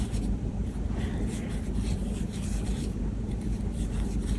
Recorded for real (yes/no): no